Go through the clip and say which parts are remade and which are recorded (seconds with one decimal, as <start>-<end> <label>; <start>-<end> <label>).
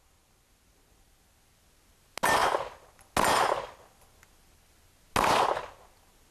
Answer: 0.0-6.3 recorded